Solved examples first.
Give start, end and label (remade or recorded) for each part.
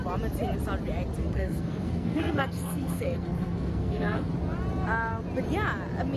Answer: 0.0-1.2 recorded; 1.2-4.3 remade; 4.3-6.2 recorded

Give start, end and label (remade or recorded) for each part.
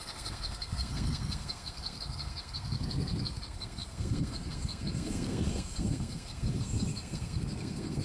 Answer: 0.0-8.0 remade